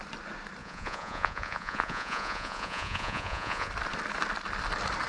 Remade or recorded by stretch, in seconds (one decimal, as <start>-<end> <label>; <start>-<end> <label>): 0.0-0.6 recorded; 0.6-3.7 remade; 3.7-5.1 recorded